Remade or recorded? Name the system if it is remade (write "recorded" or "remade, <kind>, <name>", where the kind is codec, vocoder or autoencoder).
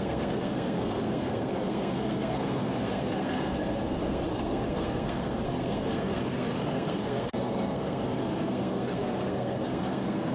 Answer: remade, codec, SNAC